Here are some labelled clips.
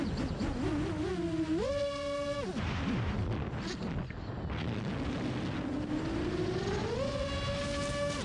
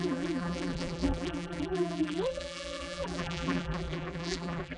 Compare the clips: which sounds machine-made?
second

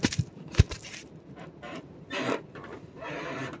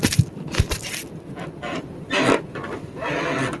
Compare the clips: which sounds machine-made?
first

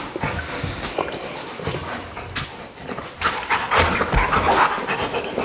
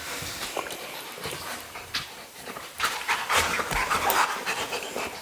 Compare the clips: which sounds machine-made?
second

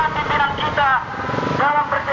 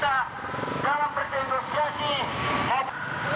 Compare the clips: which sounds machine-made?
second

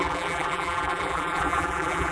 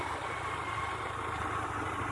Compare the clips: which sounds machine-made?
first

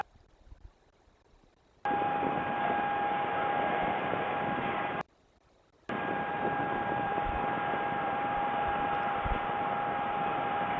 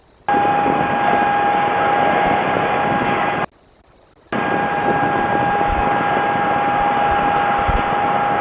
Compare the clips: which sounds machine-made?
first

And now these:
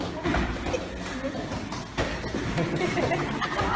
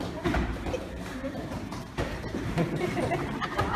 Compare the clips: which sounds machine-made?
second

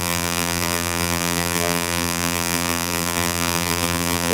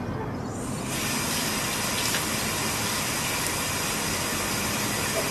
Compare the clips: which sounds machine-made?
first